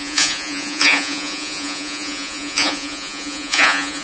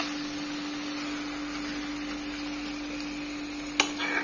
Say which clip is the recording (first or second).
second